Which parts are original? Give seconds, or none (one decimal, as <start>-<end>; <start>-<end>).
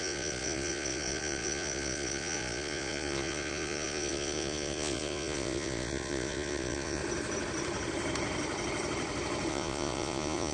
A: 7.0-9.5